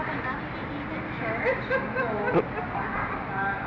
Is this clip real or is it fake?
real